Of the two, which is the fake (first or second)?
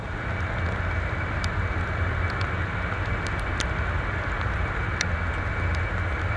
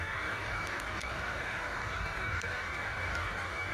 second